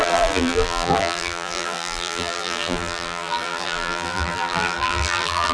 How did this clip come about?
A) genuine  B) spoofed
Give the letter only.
B